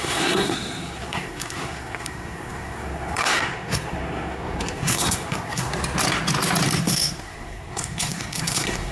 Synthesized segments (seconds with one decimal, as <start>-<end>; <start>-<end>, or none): 0.0-5.7; 6.8-8.9